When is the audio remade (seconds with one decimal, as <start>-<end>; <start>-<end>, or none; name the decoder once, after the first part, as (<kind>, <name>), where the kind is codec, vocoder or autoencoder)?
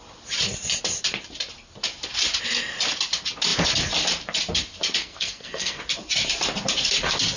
5.0-5.8 (codec, SNAC)